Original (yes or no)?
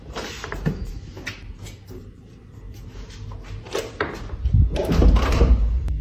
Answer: no